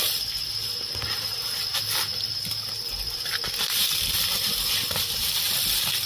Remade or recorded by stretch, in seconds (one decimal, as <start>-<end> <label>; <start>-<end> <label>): 0.0-2.1 recorded; 2.1-5.5 remade; 5.5-6.1 recorded